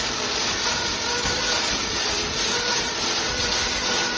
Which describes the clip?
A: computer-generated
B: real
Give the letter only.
B